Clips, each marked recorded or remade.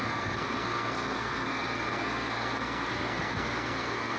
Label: remade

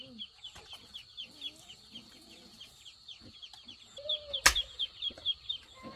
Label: recorded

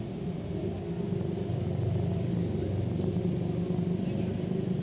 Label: recorded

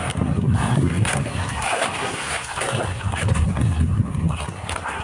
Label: remade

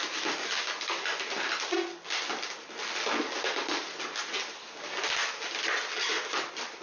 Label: recorded